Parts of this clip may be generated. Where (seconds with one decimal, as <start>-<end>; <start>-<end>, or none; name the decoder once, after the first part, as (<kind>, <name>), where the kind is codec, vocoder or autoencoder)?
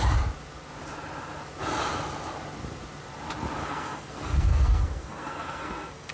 3.6-6.1 (codec, SNAC)